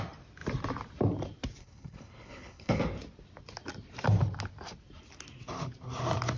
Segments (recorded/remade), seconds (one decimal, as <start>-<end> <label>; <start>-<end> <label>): 0.0-1.6 recorded; 1.6-2.8 remade; 2.8-6.4 recorded

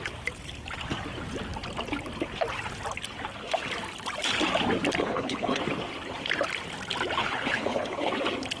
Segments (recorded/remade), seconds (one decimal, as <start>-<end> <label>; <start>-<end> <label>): 0.0-5.0 recorded; 5.0-5.6 remade; 5.6-7.2 recorded; 7.2-8.1 remade; 8.1-8.6 recorded

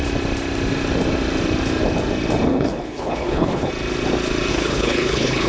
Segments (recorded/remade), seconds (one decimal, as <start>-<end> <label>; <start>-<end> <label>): 0.0-2.5 recorded; 2.5-3.7 remade; 3.7-4.5 recorded; 4.5-5.5 remade

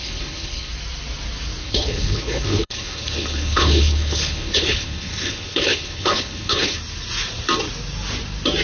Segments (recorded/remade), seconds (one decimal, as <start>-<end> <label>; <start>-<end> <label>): 0.0-0.7 remade; 0.7-1.6 recorded; 1.6-6.8 remade; 6.8-8.6 recorded

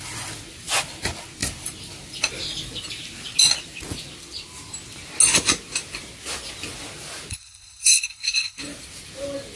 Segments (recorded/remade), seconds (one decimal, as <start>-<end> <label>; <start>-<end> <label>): 0.0-7.3 recorded; 7.3-8.6 remade; 8.6-9.6 recorded